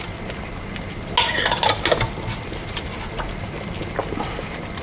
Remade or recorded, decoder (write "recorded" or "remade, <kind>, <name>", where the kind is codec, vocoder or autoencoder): recorded